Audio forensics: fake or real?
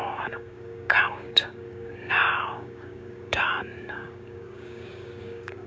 fake